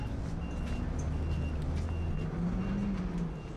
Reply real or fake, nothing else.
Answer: real